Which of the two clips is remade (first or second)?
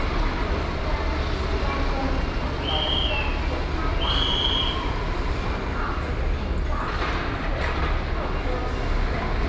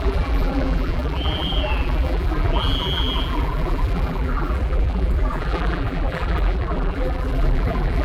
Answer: second